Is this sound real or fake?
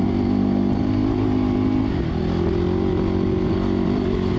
real